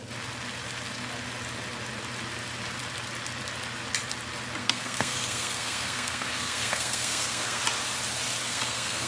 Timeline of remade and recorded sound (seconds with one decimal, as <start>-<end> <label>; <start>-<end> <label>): 0.0-4.6 recorded; 4.6-7.6 remade; 7.6-8.4 recorded; 8.4-9.1 remade